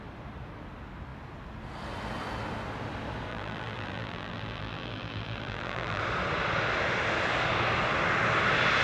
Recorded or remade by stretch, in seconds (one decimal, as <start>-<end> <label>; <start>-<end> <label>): 0.0-3.3 recorded; 3.3-6.0 remade; 6.0-8.8 recorded